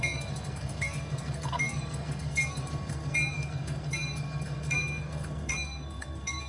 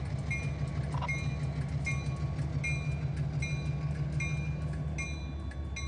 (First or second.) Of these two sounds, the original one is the second